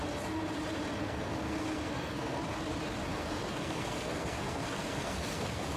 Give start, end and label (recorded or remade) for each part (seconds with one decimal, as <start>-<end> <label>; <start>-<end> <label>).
0.0-1.0 recorded; 1.0-2.4 remade; 2.4-3.1 recorded; 3.1-5.8 remade